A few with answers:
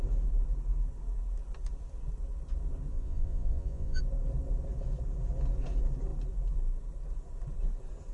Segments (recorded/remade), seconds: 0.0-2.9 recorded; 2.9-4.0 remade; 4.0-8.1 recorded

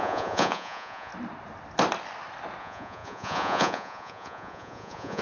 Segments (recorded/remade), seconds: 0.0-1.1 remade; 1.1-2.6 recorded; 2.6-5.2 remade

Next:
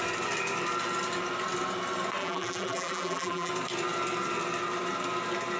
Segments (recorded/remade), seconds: 0.0-2.2 recorded; 2.2-3.5 remade; 3.5-5.6 recorded

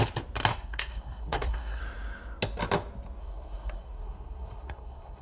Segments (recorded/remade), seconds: 0.0-0.5 recorded; 0.5-1.8 remade; 1.8-3.2 recorded; 3.2-5.2 remade